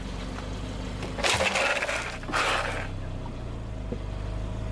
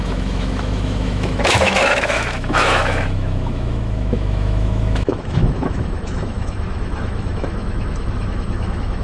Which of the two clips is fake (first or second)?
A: second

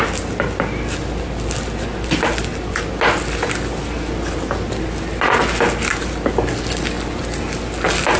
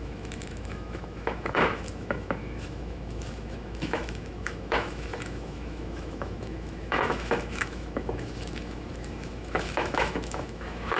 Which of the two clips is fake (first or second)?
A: second